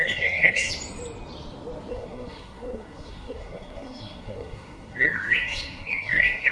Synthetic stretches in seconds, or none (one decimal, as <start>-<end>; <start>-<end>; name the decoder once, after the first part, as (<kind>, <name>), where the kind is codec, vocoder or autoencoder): 0.0-0.7 (codec, SNAC); 1.9-6.5